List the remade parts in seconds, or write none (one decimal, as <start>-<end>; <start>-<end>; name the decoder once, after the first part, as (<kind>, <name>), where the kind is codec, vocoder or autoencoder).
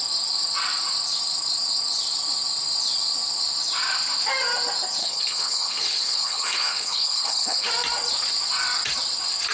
5.0-7.7 (codec, HILCodec)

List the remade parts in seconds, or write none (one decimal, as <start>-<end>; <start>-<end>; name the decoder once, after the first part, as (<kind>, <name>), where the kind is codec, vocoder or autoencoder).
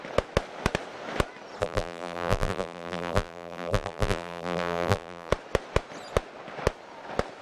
1.6-5.3 (vocoder, BigVGAN v2)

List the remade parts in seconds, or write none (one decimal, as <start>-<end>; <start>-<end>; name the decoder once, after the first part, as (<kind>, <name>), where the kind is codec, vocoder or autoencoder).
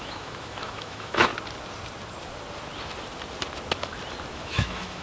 0.0-1.3 (autoencoder, DAC-VAE); 4.3-5.0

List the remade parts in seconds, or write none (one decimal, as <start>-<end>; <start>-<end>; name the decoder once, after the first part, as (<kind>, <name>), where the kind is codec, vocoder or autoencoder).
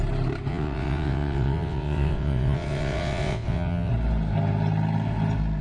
0.5-3.9 (vocoder, WaveNeXt)